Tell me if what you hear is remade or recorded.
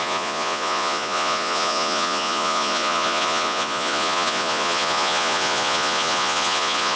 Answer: remade